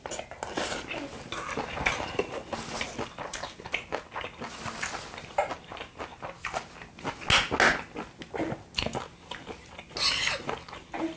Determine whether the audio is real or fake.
real